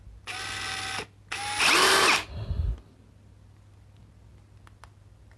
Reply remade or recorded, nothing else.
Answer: recorded